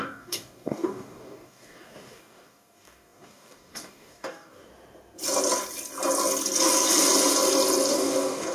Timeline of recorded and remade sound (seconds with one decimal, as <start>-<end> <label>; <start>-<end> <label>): 0.0-4.7 remade; 4.7-7.9 recorded; 7.9-8.5 remade